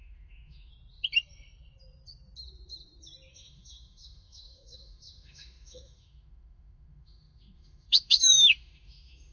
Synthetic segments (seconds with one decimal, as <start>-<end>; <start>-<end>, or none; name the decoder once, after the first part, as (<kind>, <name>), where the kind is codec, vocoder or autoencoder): 0.0-0.7 (autoencoder, DAC-VAE); 3.3-9.3